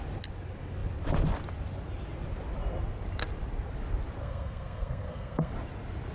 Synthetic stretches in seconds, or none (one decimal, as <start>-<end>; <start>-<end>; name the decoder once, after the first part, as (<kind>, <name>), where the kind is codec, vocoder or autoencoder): 4.2-5.5 (codec, SNAC)